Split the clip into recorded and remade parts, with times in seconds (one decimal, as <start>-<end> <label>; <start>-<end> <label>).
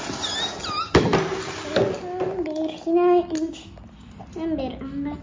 0.0-5.2 recorded